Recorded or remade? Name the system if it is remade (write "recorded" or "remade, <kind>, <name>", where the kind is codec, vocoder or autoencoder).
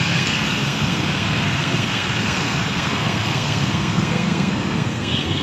remade, codec, SNAC